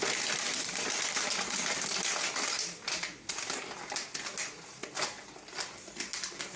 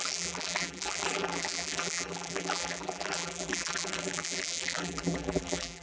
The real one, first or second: first